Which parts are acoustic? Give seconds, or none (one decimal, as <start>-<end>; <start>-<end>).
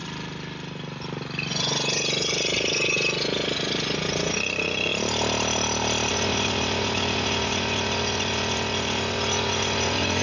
0.0-1.5; 4.9-6.1